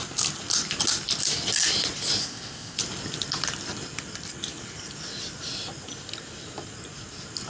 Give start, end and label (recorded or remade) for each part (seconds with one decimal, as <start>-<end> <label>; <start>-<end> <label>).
0.0-2.2 recorded; 2.2-2.8 remade; 2.8-7.5 recorded